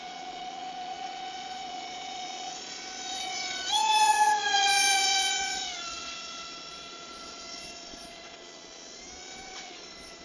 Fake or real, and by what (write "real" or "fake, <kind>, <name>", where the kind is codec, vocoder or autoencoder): fake, vocoder, Vocos